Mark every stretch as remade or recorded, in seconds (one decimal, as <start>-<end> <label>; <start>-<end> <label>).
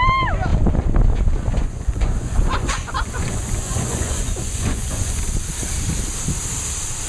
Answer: 0.0-1.5 recorded; 1.5-5.2 remade; 5.2-7.1 recorded